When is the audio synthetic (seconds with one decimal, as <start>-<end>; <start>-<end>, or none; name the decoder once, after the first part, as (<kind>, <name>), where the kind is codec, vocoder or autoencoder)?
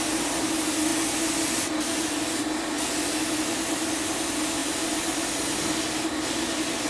none